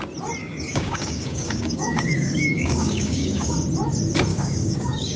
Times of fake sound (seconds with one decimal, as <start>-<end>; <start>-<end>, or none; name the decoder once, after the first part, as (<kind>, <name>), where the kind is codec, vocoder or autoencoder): 0.4-3.5 (codec, DAC); 4.3-5.2